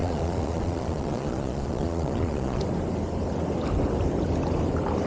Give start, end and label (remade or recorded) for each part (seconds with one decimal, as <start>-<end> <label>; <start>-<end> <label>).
0.0-2.6 remade; 2.6-5.1 recorded